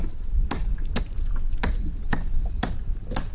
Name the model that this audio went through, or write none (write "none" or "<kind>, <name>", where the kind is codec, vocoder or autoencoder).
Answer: none